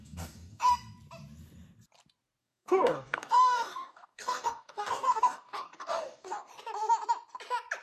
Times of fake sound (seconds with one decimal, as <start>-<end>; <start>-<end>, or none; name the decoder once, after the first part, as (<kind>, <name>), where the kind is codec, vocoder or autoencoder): 0.0-0.7 (codec, DAC); 2.4-6.5